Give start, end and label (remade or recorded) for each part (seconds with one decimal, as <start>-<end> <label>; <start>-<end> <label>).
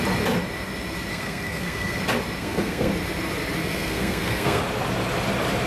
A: 0.0-1.1 recorded; 1.1-2.0 remade; 2.0-2.4 recorded; 2.4-2.9 remade; 2.9-3.6 recorded; 3.6-4.6 remade; 4.6-5.7 recorded